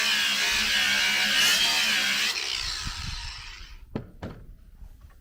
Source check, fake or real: real